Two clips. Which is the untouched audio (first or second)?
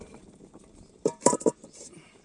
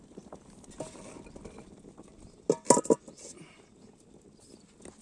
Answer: second